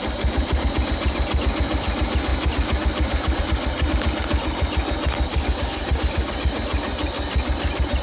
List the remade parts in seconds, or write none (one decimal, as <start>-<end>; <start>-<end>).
5.3-6.3